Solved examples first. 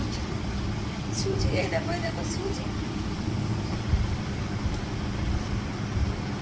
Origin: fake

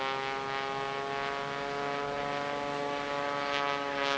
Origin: real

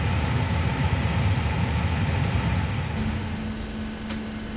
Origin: real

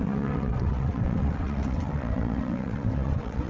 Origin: fake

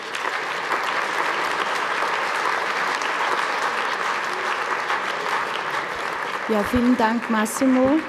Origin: real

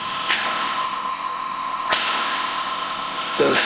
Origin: fake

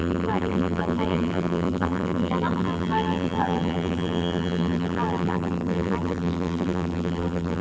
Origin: fake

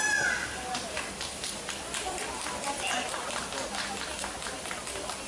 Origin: real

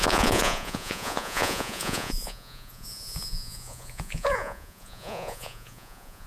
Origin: fake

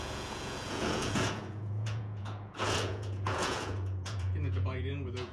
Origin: fake